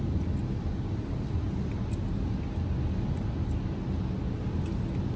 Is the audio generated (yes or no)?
no